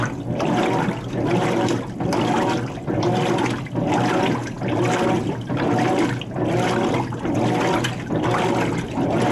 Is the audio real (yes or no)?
yes